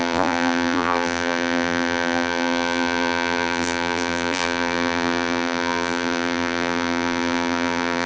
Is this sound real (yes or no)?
no